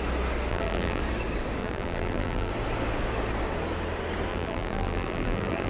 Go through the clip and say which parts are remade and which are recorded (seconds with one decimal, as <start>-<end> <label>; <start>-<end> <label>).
0.0-0.5 recorded; 0.5-1.0 remade; 1.0-1.6 recorded; 1.6-2.5 remade; 2.5-4.3 recorded; 4.3-5.7 remade